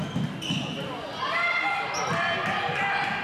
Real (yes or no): yes